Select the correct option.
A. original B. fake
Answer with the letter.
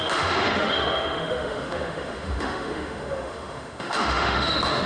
B